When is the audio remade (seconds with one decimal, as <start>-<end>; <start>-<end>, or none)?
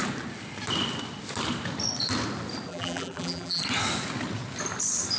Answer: 2.7-3.6